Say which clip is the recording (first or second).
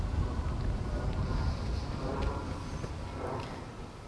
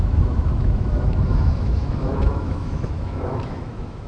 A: first